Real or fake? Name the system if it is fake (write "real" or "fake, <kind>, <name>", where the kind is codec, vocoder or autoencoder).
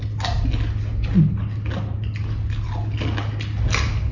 real